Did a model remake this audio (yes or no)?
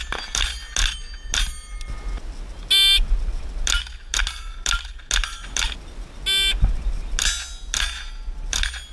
no